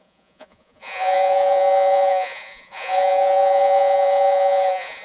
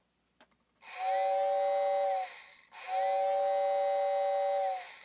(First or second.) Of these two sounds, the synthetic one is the first